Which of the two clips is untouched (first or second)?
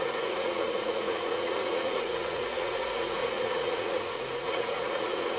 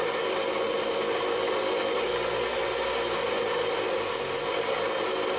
second